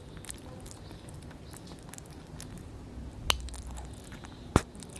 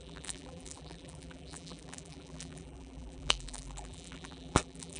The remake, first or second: second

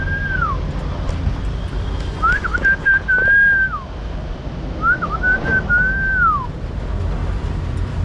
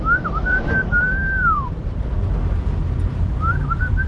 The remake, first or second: second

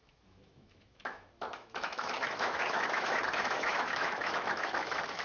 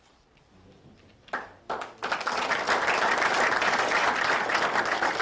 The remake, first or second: first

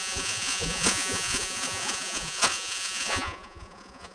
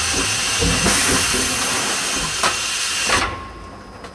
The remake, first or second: first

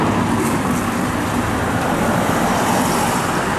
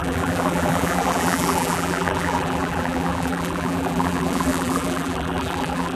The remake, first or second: second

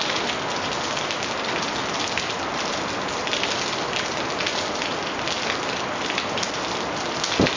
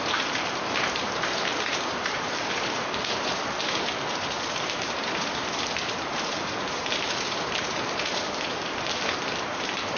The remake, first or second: second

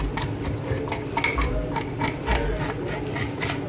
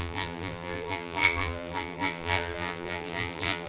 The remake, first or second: second